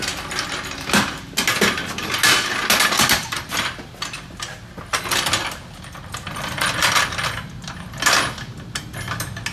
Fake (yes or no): no